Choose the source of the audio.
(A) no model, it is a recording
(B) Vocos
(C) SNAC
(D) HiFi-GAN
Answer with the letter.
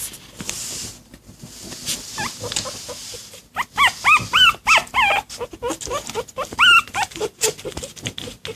A